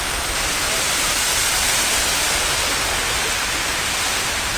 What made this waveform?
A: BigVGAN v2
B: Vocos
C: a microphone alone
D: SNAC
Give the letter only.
C